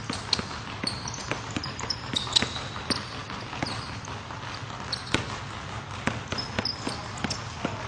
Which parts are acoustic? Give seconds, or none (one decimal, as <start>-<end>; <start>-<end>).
0.0-1.2; 2.1-7.9